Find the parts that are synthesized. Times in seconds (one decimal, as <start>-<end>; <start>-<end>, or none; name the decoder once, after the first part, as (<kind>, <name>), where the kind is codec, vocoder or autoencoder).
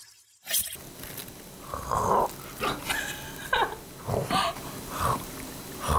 none